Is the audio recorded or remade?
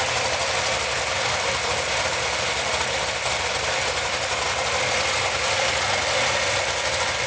recorded